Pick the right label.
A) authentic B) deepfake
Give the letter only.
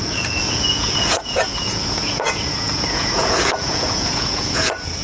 B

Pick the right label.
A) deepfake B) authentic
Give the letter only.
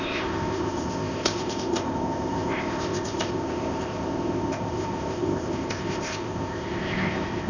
A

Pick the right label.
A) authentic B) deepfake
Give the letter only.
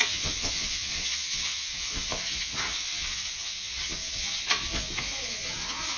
B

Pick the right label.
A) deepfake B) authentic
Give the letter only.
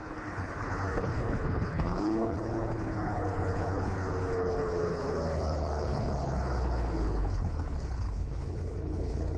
A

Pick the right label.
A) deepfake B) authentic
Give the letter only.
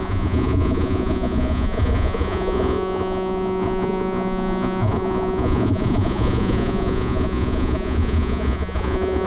A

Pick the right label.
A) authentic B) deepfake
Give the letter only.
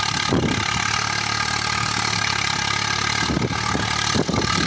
A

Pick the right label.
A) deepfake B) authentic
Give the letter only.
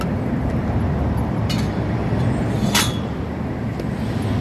B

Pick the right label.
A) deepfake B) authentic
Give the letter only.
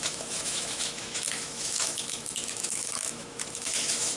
A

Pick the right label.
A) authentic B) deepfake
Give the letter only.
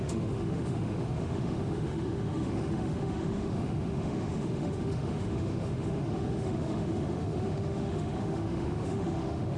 B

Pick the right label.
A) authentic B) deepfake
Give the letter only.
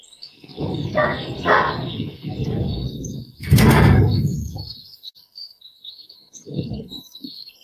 B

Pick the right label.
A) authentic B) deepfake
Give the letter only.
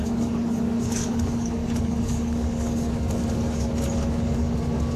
B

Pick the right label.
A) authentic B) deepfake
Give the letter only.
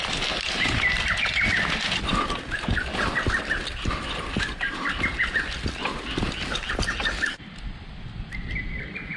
A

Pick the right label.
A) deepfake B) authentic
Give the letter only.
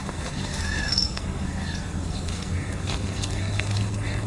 A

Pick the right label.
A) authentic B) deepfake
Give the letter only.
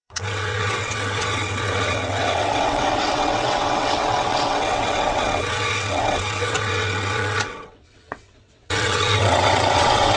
B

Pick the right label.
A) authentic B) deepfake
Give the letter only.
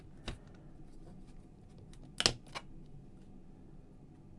A